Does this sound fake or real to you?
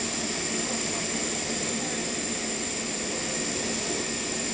real